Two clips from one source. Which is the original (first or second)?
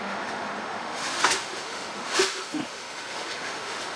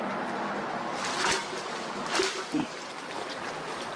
second